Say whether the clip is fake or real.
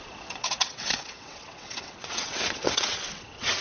fake